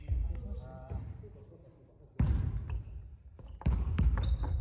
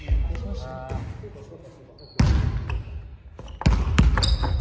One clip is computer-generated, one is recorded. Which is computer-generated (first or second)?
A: first